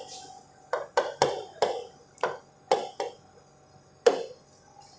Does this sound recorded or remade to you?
recorded